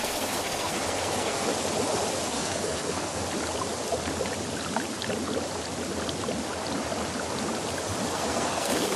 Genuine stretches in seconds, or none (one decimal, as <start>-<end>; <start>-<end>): 1.5-2.3; 3.2-8.1